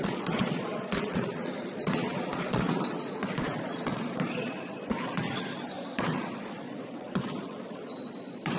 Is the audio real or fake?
fake